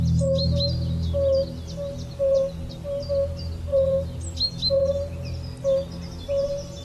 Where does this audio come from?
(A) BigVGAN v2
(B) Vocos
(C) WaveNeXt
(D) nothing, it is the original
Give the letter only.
D